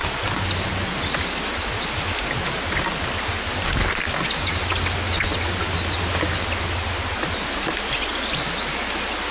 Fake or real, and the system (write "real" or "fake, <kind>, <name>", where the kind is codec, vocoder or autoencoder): real